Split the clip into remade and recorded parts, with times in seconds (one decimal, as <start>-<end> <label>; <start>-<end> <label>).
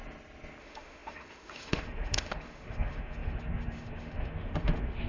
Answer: 0.0-0.6 recorded; 0.6-5.1 remade